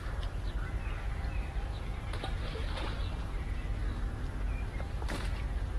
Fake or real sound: fake